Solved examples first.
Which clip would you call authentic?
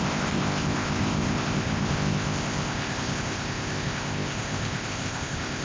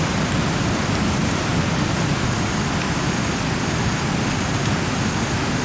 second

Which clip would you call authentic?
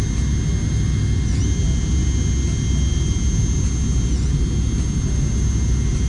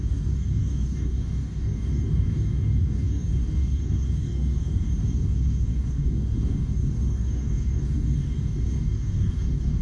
first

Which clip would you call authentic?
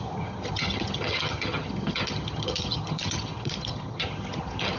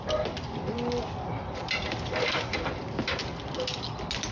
second